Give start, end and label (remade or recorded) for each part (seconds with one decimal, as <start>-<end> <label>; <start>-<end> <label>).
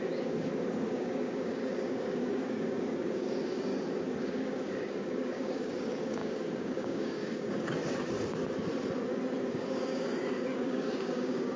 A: 0.0-3.7 remade; 3.7-4.2 recorded; 4.2-7.8 remade; 7.8-9.4 recorded; 9.4-11.6 remade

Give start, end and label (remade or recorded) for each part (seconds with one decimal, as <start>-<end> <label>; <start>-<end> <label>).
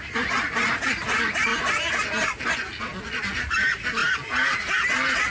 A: 0.0-5.3 recorded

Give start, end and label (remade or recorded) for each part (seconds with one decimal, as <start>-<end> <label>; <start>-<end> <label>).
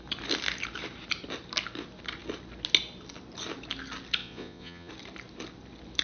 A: 0.0-4.2 recorded; 4.2-4.9 remade; 4.9-6.0 recorded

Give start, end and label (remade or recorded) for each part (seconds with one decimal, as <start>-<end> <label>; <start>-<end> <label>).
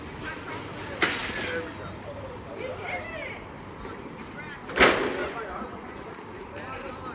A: 0.0-5.2 recorded; 5.2-6.1 remade; 6.1-7.1 recorded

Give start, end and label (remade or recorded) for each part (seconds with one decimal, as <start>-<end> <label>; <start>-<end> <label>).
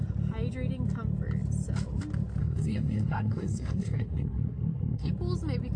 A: 0.0-2.4 recorded; 2.4-5.1 remade; 5.1-5.8 recorded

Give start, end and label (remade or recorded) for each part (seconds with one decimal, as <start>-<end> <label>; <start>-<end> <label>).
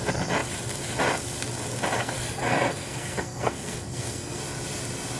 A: 0.0-2.0 recorded; 2.0-4.4 remade; 4.4-5.2 recorded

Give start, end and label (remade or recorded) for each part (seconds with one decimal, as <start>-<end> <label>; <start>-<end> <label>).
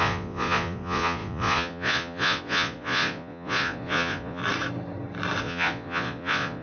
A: 0.0-4.4 remade; 4.4-5.4 recorded; 5.4-6.6 remade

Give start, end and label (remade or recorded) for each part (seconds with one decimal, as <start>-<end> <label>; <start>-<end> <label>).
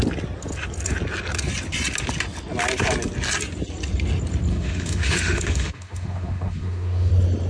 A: 0.0-4.5 recorded; 4.5-7.1 remade; 7.1-7.5 recorded